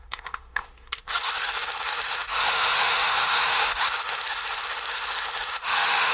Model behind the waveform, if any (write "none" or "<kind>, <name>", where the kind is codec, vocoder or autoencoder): autoencoder, DAC-VAE